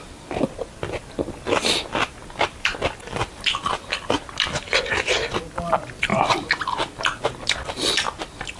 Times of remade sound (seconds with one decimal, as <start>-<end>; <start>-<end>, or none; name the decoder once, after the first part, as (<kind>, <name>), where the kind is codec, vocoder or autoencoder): none